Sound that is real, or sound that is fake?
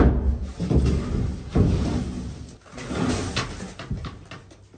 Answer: real